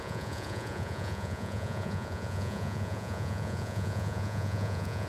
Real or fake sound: fake